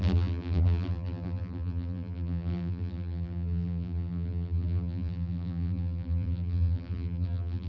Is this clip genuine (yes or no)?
no